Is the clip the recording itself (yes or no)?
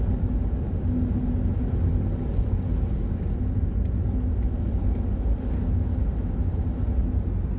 yes